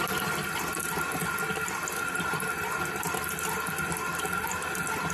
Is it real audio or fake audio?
real